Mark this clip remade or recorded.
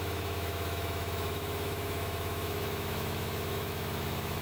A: remade